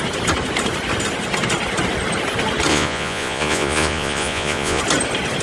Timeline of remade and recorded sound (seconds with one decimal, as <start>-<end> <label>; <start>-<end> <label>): 0.0-2.7 recorded; 2.7-4.8 remade; 4.8-5.4 recorded